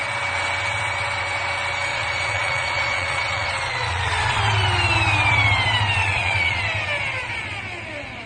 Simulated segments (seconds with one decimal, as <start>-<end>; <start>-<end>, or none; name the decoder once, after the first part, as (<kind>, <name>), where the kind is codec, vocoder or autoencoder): 1.9-4.4 (vocoder, Vocos); 6.0-6.6